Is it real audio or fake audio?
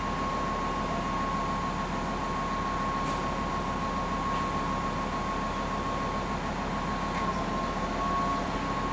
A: real